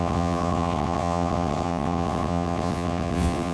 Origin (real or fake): fake